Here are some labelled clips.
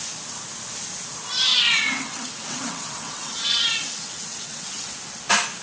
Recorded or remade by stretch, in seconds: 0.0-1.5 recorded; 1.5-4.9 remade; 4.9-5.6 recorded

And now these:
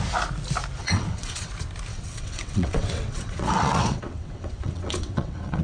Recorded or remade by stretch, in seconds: 0.0-0.8 recorded; 0.8-1.5 remade; 1.5-1.9 recorded; 1.9-5.6 remade

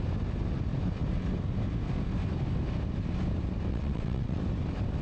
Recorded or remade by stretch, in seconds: 0.0-3.7 recorded; 3.7-4.4 remade; 4.4-5.0 recorded

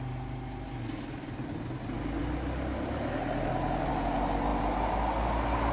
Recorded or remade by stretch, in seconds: 0.0-5.7 recorded

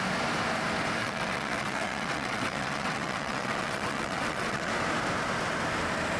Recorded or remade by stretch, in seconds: 0.0-1.0 recorded; 1.0-4.7 remade; 4.7-6.2 recorded

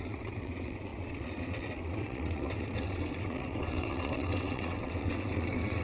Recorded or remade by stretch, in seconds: 0.0-5.8 remade

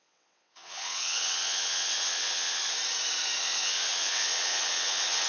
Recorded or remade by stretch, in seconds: 0.0-2.6 remade; 2.6-3.4 recorded; 3.4-5.3 remade

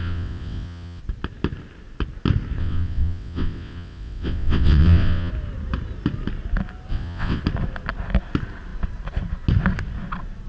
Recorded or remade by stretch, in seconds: 0.0-1.0 remade; 1.0-2.6 recorded; 2.6-5.3 remade; 5.3-6.9 recorded; 6.9-7.4 remade; 7.4-10.5 recorded